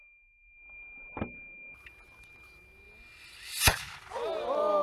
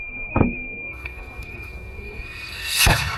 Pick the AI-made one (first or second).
second